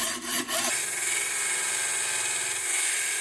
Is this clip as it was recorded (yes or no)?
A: yes